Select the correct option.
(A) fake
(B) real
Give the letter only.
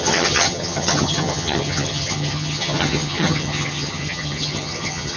A